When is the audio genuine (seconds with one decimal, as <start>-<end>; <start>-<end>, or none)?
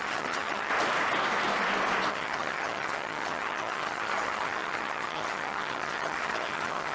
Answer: 0.7-2.1